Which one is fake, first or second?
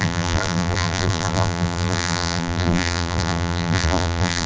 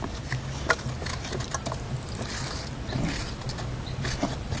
first